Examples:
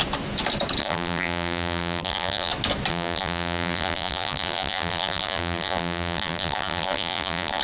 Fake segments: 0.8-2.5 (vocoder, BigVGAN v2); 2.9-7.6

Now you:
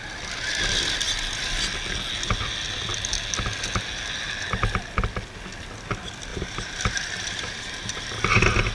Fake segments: 6.3-8.1 (vocoder, BigVGAN v2)

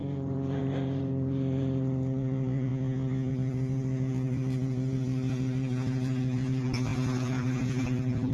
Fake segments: 0.0-2.7 (vocoder, BigVGAN v2); 3.3-8.3

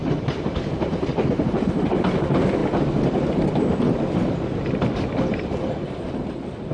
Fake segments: 0.0-1.7 (vocoder, BigVGAN v2)

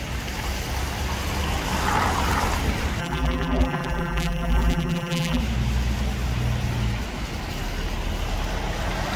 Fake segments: 3.0-5.4 (vocoder, BigVGAN v2)

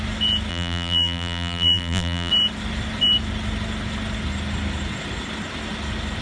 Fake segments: 0.5-2.3 (vocoder, BigVGAN v2)

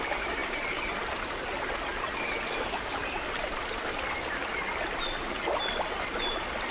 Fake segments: none